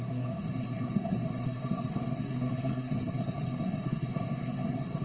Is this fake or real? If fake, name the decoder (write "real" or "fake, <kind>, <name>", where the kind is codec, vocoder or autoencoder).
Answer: fake, codec, SNAC